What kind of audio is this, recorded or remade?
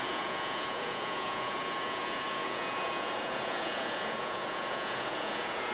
remade